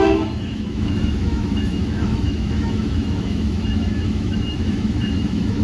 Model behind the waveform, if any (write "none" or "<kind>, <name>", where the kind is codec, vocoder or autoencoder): autoencoder, DAC-VAE